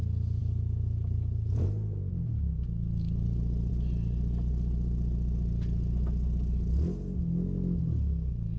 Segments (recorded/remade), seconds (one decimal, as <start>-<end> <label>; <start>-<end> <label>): 0.0-8.6 recorded